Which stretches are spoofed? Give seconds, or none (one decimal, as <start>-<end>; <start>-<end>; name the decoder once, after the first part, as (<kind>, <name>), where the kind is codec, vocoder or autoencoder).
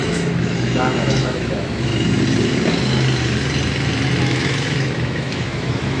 0.0-1.9 (autoencoder, DAC-VAE); 4.2-6.0